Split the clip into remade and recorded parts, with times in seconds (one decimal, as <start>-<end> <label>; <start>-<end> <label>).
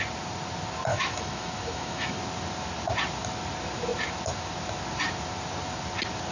0.0-0.9 recorded; 0.9-2.2 remade; 2.2-6.3 recorded